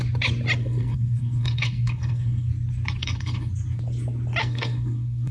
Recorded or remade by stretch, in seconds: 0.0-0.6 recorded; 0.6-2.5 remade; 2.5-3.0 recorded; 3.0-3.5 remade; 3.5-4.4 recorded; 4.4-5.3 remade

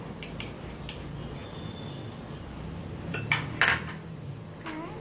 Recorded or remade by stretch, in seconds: 0.0-5.0 recorded